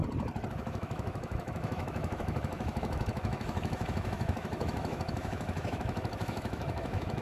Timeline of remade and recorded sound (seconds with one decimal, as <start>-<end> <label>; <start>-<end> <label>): 0.0-0.5 recorded; 0.5-7.2 remade